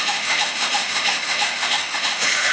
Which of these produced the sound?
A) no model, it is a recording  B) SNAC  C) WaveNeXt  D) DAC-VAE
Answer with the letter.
D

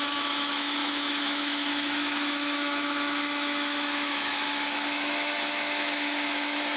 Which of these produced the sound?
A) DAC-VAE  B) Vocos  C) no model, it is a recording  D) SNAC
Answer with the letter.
A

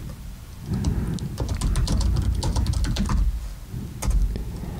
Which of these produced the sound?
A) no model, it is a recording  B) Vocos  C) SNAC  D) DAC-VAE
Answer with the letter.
A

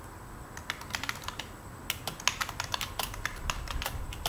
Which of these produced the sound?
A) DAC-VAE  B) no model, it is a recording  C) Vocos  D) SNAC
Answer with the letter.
B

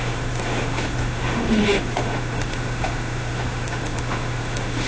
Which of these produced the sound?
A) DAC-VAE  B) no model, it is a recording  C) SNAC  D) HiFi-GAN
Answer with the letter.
A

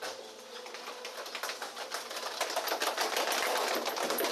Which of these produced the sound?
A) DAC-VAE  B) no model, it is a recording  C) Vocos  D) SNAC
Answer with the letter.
B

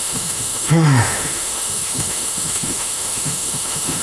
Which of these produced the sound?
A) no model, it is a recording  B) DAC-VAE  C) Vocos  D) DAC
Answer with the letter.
B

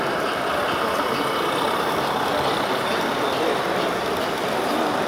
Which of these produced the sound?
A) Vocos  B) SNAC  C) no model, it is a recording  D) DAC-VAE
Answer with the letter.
C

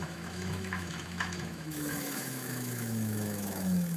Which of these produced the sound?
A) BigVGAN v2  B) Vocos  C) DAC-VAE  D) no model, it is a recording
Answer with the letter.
C